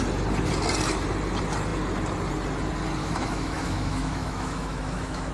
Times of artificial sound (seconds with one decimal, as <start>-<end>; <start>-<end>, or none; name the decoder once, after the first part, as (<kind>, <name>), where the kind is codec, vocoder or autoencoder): 3.0-5.3 (autoencoder, DAC-VAE)